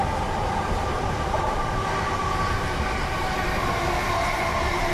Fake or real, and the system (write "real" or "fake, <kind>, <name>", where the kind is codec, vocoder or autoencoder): fake, vocoder, BigVGAN v2